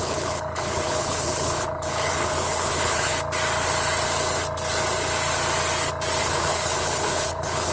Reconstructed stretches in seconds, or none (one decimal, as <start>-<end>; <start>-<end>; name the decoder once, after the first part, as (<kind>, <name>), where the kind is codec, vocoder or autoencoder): 0.0-3.1 (codec, HILCodec); 6.2-7.7